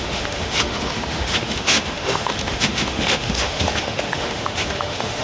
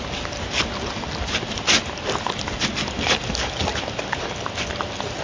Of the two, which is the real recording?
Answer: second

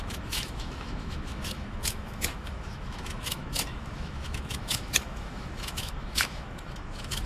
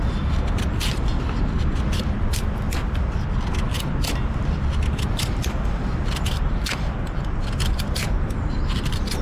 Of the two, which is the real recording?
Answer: second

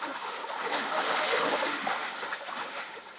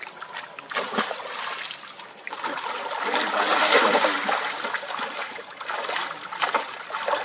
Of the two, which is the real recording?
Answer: second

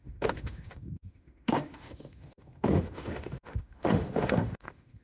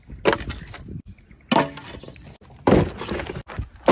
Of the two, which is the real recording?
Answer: second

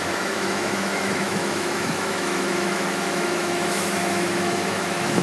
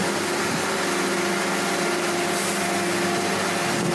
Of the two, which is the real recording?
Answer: second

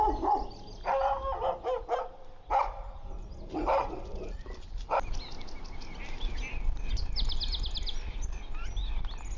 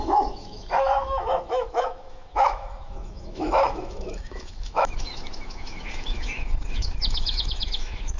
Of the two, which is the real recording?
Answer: first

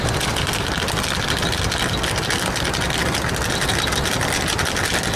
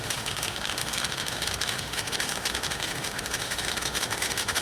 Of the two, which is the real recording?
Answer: first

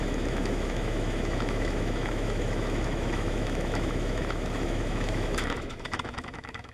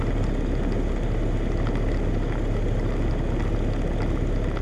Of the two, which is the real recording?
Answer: second